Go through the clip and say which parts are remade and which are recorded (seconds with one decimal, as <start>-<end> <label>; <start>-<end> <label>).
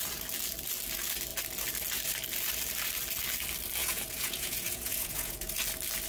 0.0-3.8 recorded; 3.8-5.6 remade; 5.6-6.1 recorded